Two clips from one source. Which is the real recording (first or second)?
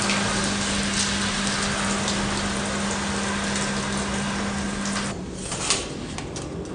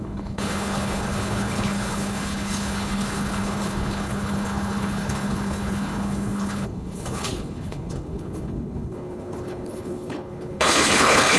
first